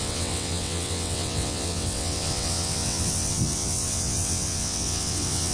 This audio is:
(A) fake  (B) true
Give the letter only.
A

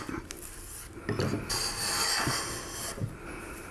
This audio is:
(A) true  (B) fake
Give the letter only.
A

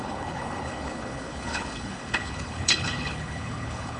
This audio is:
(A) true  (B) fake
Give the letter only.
B